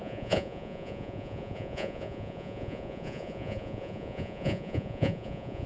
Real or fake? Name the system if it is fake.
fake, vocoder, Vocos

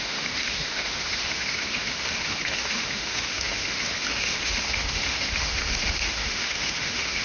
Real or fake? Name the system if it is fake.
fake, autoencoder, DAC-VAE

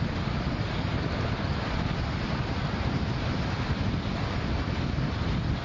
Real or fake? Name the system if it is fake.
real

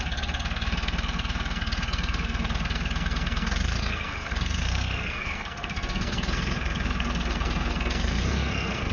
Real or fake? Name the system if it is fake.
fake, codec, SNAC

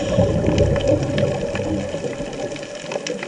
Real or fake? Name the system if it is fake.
real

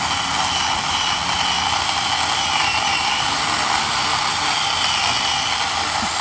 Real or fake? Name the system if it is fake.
real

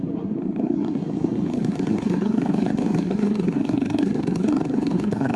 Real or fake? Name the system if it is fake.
fake, codec, SNAC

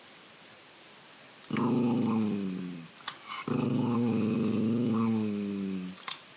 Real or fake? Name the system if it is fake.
real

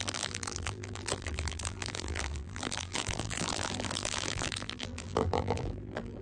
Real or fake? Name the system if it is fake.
fake, vocoder, BigVGAN v2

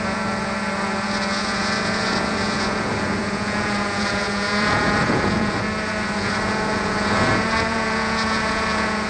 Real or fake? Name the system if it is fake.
fake, vocoder, Vocos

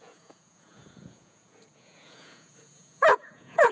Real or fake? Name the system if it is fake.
fake, vocoder, Vocos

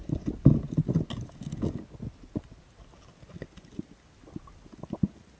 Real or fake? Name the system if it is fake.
real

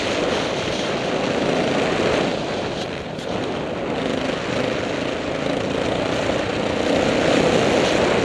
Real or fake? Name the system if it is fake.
real